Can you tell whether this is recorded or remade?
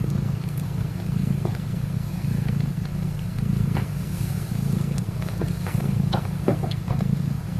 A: remade